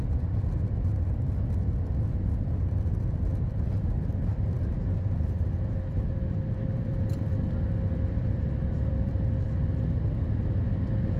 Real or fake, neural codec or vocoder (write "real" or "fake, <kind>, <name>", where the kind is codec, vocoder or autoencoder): fake, vocoder, BigVGAN v2